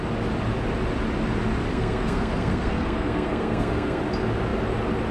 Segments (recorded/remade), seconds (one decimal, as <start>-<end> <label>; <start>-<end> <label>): 0.0-1.7 recorded; 1.7-4.0 remade; 4.0-5.1 recorded